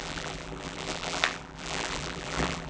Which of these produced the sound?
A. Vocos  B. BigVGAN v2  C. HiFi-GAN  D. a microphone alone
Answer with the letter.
B